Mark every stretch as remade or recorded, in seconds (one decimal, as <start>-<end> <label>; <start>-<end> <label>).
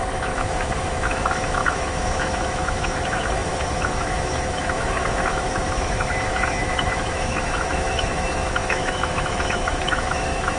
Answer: 0.0-10.6 remade